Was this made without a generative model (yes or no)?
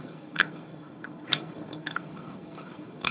no